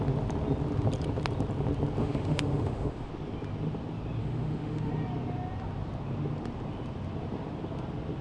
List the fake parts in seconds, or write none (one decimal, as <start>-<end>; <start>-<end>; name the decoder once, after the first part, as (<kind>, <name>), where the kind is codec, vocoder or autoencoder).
2.0-3.1 (autoencoder, DAC-VAE); 4.2-4.9